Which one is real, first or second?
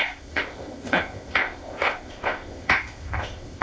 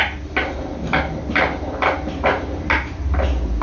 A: second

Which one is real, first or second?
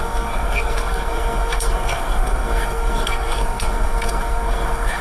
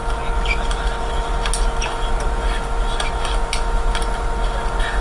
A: second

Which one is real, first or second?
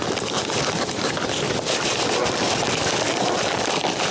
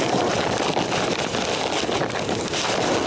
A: second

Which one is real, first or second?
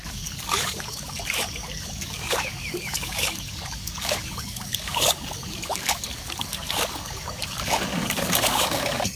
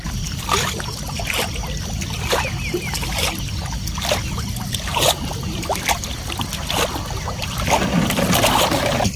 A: second